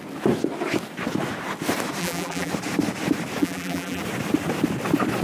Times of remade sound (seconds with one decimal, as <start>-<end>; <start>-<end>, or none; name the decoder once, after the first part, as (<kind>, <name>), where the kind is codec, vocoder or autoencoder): 2.0-2.5 (vocoder, BigVGAN v2); 3.4-4.0